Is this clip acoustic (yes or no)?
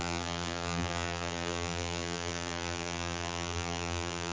no